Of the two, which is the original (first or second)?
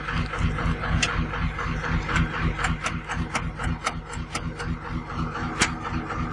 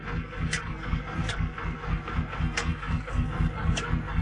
first